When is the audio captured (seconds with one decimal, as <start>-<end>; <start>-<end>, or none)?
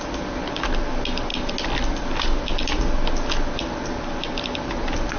0.0-5.2